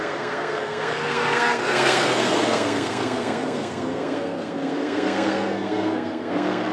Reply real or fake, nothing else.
fake